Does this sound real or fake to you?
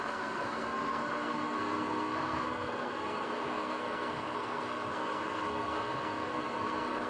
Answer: fake